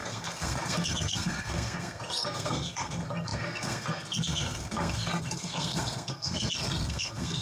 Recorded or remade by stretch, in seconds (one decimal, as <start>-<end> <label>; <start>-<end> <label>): 0.0-7.4 remade